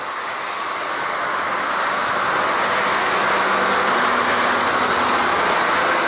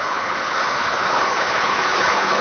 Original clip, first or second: first